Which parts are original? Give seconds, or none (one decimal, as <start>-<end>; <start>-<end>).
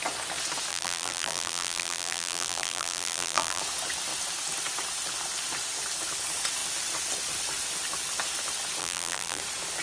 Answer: 0.0-0.7; 3.6-8.8; 9.4-9.8